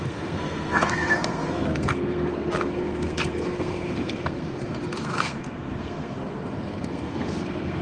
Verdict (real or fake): fake